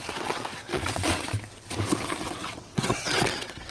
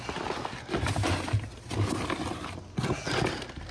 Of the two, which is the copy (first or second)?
first